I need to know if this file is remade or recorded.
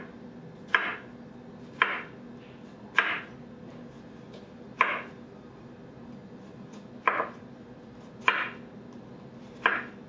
recorded